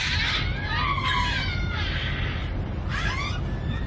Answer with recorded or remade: recorded